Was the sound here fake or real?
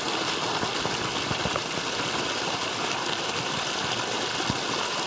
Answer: real